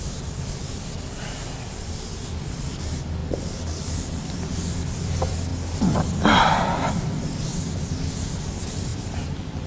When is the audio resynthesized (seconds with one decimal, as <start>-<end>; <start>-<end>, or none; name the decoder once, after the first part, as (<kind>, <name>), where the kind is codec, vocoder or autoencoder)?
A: 0.0-3.2 (vocoder, BigVGAN v2); 4.1-5.5; 6.6-7.5; 8.2-9.7